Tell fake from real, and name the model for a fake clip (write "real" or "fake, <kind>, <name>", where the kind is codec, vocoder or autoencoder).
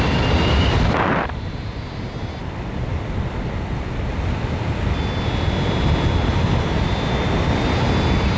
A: real